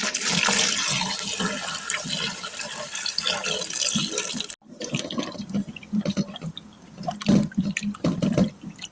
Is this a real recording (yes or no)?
yes